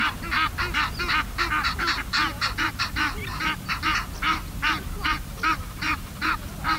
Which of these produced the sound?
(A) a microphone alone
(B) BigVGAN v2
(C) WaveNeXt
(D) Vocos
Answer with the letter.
A